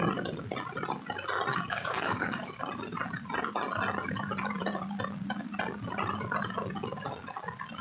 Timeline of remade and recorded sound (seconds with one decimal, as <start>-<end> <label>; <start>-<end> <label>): 0.0-1.5 recorded; 1.5-2.5 remade; 2.5-7.8 recorded

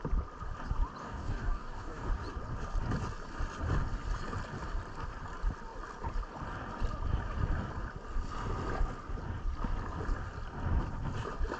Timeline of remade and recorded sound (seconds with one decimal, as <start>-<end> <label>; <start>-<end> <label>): 0.0-1.0 recorded; 1.0-2.1 remade; 2.1-11.6 recorded